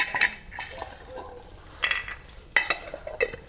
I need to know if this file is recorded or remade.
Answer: recorded